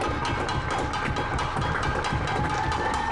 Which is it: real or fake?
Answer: real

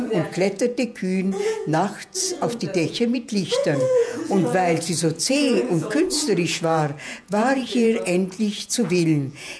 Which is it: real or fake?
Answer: fake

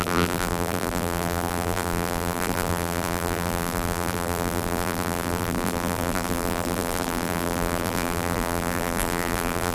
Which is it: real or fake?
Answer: fake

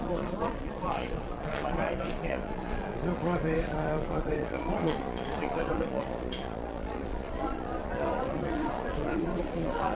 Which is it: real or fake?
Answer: fake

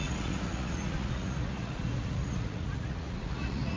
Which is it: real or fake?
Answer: fake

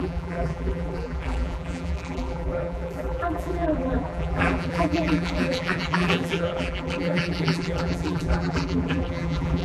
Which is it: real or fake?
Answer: fake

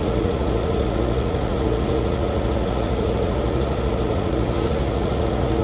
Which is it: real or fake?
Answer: fake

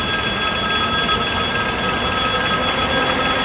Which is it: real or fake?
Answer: real